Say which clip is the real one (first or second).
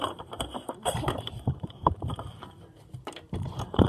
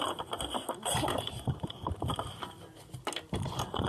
second